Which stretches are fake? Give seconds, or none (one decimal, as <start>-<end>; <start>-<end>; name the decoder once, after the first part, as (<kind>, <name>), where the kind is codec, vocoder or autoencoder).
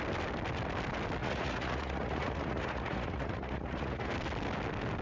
1.2-4.1 (vocoder, Vocos)